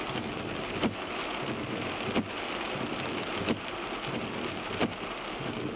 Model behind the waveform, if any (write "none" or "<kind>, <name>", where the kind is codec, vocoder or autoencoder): none